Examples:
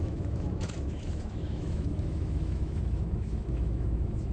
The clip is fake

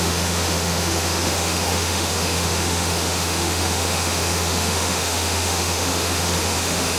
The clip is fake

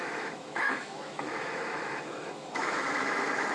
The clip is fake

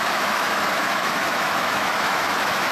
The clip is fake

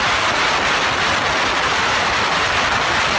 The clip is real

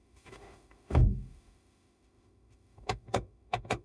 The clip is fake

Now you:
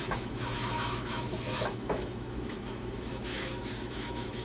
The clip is fake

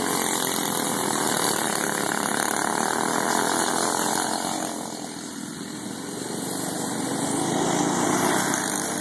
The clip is real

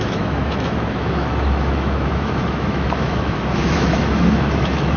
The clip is fake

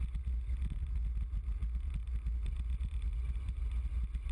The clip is real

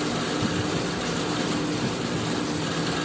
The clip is real